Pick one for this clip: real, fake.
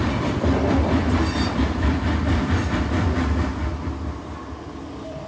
real